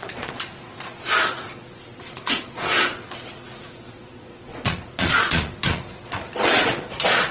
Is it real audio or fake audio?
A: fake